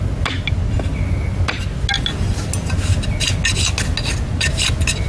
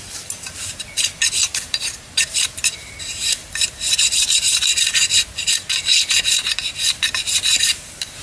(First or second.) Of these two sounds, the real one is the first